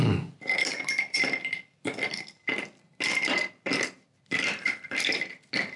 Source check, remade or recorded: recorded